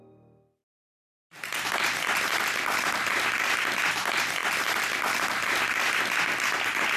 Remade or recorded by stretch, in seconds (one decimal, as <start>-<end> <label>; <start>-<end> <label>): 0.0-0.6 recorded; 0.6-1.7 remade; 1.7-4.4 recorded; 4.4-6.0 remade; 6.0-7.0 recorded